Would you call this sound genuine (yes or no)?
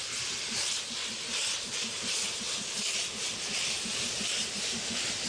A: no